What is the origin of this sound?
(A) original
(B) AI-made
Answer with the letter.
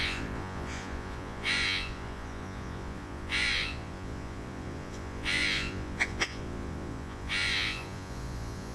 B